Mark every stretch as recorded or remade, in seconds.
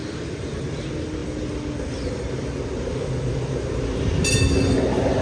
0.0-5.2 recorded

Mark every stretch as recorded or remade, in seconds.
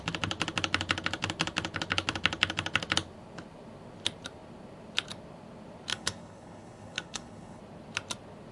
0.0-5.9 recorded; 5.9-7.6 remade; 7.6-8.5 recorded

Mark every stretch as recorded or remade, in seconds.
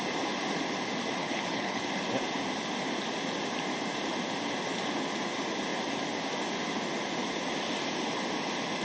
0.0-1.2 recorded; 1.2-1.8 remade; 1.8-8.8 recorded